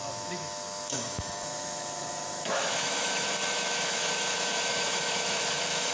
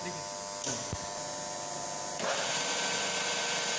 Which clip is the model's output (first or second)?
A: first